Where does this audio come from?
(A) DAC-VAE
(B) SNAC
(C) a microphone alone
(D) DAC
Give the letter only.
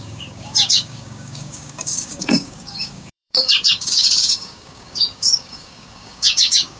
D